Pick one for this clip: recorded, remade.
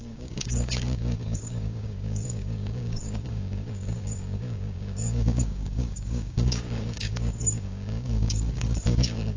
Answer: remade